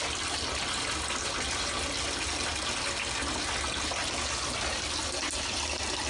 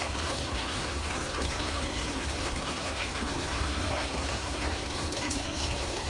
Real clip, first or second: first